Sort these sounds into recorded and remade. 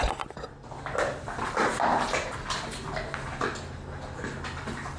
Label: recorded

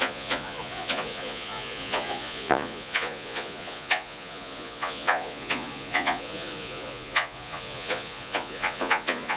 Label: remade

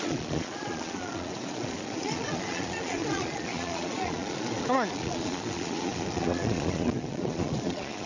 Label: remade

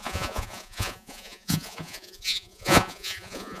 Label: remade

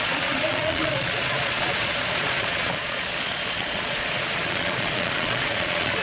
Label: remade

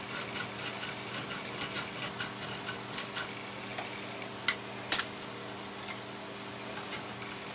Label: recorded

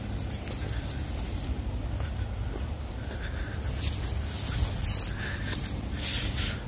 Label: recorded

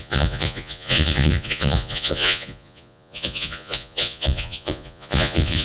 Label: remade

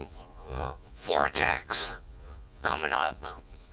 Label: remade